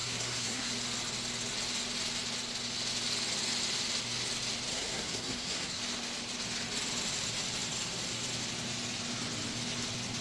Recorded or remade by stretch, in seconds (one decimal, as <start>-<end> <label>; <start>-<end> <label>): 0.0-0.7 remade; 0.7-4.7 recorded; 4.7-5.8 remade; 5.8-10.2 recorded